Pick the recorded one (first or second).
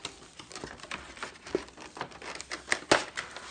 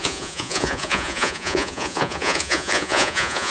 first